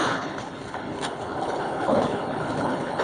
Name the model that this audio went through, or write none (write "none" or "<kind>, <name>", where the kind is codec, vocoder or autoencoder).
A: codec, HILCodec